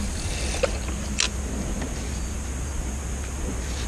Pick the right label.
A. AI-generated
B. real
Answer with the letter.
B